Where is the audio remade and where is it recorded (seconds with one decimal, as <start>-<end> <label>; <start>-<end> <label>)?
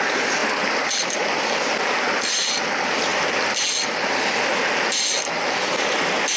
0.0-6.4 recorded